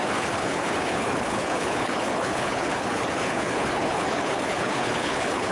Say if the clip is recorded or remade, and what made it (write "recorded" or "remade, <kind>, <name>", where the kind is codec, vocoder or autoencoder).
remade, codec, HILCodec